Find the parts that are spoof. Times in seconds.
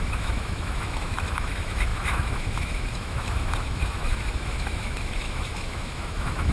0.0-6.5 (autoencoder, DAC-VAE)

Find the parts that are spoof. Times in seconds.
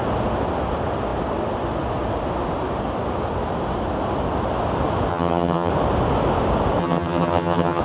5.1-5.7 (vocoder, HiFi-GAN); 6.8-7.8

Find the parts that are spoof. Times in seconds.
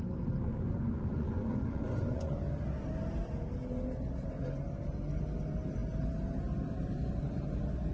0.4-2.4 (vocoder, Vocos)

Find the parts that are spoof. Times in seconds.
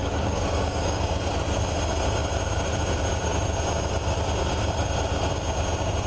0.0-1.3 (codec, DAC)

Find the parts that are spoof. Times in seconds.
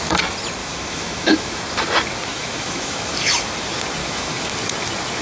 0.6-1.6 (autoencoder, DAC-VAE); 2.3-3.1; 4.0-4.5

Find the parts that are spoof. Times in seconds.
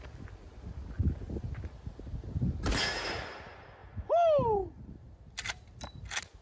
none